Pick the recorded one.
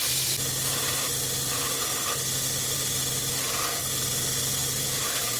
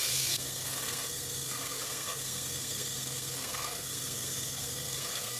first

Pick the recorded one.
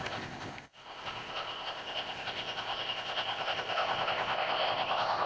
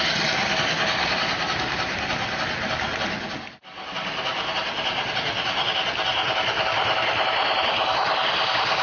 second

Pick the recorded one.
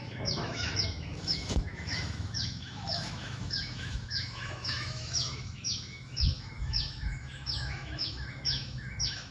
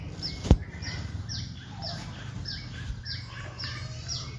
second